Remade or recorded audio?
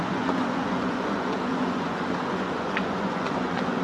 remade